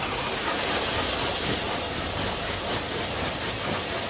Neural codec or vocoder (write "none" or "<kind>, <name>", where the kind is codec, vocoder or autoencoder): none